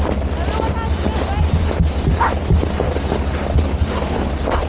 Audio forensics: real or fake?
real